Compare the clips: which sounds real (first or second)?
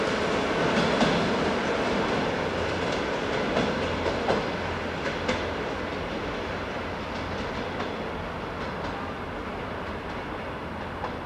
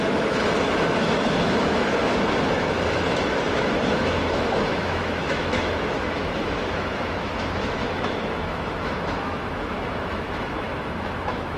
first